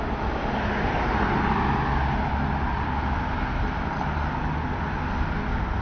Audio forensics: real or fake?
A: real